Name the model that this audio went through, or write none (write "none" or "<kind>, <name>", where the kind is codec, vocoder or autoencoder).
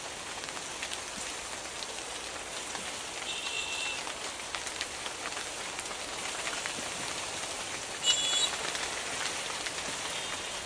none